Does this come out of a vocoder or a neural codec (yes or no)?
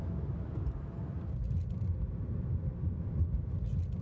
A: no